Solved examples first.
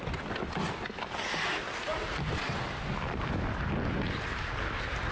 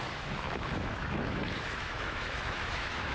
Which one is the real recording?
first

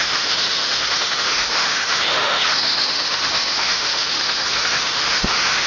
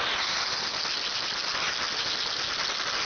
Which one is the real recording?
second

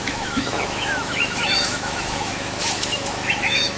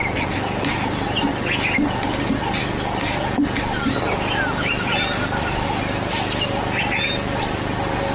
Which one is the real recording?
second